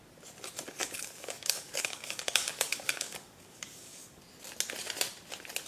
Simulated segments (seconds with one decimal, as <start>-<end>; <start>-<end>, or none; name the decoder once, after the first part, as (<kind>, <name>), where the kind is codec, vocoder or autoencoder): 0.8-4.2 (codec, DAC)